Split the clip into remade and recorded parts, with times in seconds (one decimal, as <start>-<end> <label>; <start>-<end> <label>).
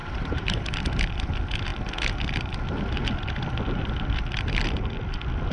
0.0-0.8 remade; 0.8-5.5 recorded